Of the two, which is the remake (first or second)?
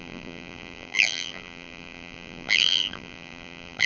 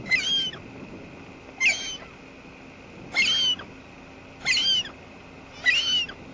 first